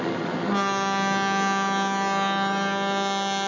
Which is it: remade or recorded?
recorded